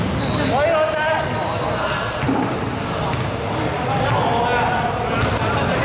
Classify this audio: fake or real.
real